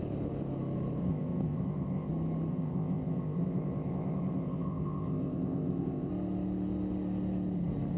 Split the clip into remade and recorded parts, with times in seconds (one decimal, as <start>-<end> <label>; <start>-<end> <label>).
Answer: 0.0-1.0 recorded; 1.0-2.1 remade; 2.1-2.5 recorded; 2.5-6.1 remade; 6.1-8.0 recorded